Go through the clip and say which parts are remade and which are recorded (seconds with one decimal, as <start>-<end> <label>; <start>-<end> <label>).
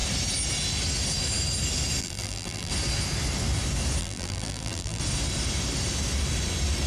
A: 0.0-2.0 recorded; 2.0-2.7 remade; 2.7-4.0 recorded; 4.0-5.0 remade; 5.0-6.9 recorded